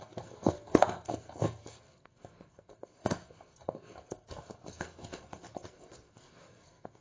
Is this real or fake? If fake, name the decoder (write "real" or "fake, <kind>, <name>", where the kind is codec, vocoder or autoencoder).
fake, codec, SNAC